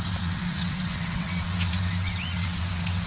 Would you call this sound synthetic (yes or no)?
yes